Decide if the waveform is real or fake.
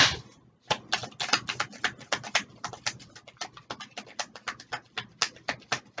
real